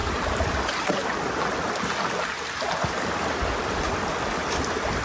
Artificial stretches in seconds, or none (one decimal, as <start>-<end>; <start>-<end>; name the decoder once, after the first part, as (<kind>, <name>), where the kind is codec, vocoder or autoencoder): none